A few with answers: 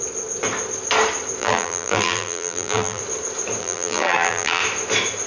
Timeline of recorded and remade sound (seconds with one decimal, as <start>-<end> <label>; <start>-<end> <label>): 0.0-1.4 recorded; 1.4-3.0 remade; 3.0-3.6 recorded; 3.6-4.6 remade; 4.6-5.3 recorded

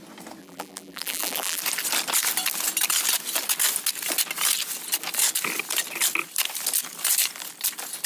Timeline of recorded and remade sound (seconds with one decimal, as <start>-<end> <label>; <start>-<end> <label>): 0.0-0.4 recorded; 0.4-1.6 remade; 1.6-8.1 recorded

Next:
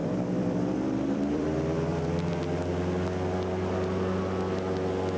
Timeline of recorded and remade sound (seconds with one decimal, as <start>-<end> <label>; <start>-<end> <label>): 0.0-2.3 remade; 2.3-5.2 recorded

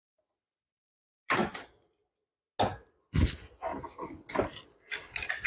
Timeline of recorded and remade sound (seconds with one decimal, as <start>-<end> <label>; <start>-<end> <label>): 0.0-5.5 recorded

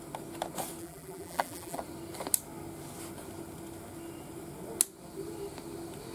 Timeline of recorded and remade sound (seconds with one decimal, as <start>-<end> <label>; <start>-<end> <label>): 0.0-0.8 recorded; 0.8-1.8 remade; 1.8-6.1 recorded

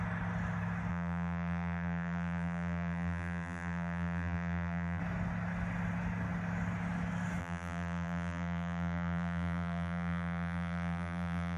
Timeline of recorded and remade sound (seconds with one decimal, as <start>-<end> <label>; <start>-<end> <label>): 0.0-0.9 recorded; 0.9-5.0 remade; 5.0-7.4 recorded; 7.4-11.6 remade